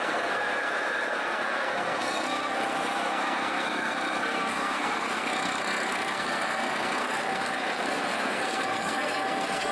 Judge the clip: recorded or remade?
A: remade